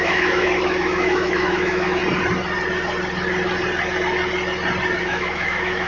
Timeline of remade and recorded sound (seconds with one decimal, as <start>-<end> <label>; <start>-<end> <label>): 0.0-2.0 remade; 2.0-5.0 recorded; 5.0-5.9 remade